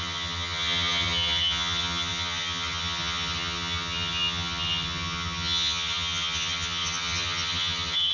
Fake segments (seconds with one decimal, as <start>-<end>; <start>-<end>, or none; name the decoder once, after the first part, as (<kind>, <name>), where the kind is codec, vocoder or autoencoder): 0.0-8.1 (vocoder, HiFi-GAN)